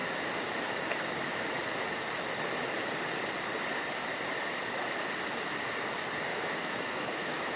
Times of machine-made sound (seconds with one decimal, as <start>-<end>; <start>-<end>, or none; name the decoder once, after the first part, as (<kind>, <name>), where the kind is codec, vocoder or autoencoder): 6.3-7.6 (autoencoder, DAC-VAE)